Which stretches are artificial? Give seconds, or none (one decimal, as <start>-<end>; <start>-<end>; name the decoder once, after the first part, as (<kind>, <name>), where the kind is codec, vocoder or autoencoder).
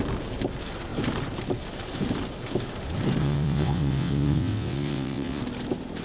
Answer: 3.2-5.4 (vocoder, WaveNeXt)